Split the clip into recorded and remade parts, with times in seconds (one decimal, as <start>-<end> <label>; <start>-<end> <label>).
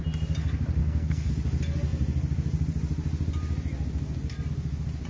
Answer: 0.0-0.8 recorded; 0.8-1.3 remade; 1.3-5.1 recorded